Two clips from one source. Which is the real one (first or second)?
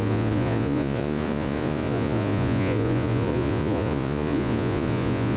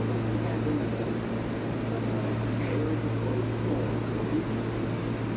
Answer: second